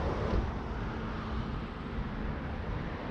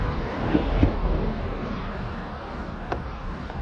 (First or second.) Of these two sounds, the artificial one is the second